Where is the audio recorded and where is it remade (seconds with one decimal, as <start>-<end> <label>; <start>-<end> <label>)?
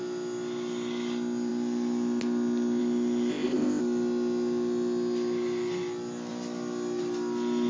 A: 0.0-3.3 recorded; 3.3-3.8 remade; 3.8-7.7 recorded